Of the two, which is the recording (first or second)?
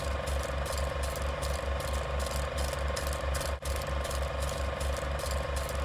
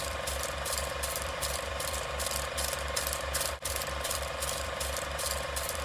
first